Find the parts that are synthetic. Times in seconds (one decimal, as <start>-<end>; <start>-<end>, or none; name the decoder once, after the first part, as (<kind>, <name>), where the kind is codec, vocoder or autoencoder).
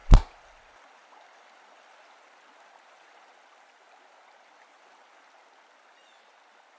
0.0-1.9 (vocoder, BigVGAN v2)